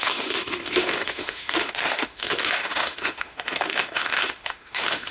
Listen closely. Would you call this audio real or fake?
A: fake